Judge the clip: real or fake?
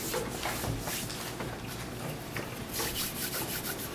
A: fake